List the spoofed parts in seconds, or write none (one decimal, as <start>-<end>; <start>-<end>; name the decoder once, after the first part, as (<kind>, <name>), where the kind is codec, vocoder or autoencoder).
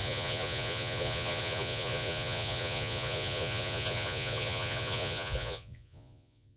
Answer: 0.0-6.6 (vocoder, Vocos)